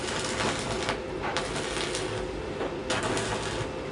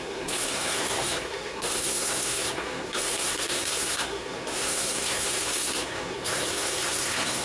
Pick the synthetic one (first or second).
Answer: second